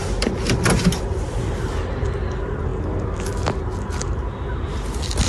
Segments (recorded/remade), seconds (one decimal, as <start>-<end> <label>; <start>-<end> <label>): 0.0-5.3 recorded